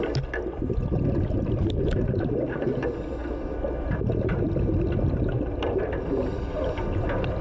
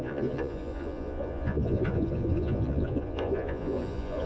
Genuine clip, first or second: first